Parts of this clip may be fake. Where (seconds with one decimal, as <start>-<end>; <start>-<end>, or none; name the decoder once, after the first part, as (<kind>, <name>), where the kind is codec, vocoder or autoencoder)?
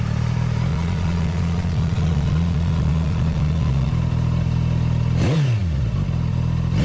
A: 0.7-3.9 (vocoder, Vocos)